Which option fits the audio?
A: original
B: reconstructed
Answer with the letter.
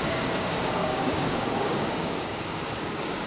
B